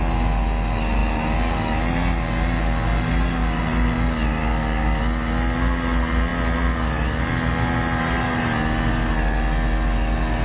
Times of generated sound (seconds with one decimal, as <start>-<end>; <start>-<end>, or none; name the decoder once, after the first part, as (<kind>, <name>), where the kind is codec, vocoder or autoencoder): 4.4-5.0 (codec, DAC)